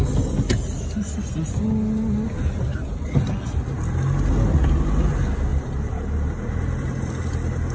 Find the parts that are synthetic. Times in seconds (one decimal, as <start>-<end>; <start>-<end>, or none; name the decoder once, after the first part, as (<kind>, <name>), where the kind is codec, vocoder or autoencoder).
5.5-7.1 (vocoder, BigVGAN v2)